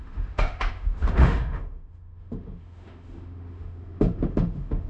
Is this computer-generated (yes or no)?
yes